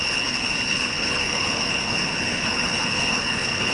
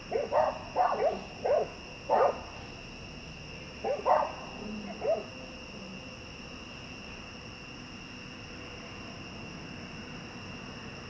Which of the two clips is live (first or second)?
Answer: second